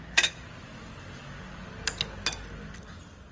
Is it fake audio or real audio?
real